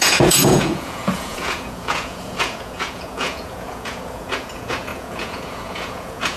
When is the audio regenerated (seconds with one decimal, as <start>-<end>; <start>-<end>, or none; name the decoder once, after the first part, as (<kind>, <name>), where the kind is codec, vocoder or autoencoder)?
0.0-6.4 (vocoder, Vocos)